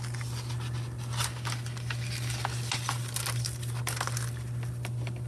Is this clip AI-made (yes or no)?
no